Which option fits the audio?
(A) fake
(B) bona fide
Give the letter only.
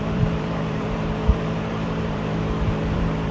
A